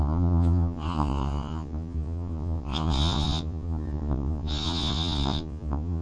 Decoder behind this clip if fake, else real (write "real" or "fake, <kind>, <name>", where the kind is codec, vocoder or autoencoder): fake, vocoder, Vocos